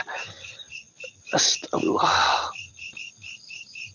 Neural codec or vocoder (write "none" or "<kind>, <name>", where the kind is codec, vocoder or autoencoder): none